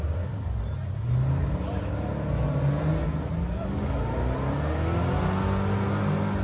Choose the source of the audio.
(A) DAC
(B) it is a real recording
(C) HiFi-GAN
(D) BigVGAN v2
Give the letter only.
B